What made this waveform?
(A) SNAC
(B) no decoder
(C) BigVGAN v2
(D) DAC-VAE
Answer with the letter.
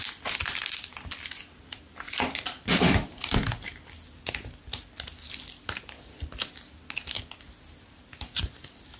B